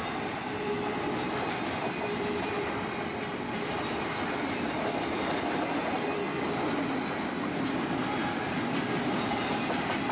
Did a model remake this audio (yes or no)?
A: no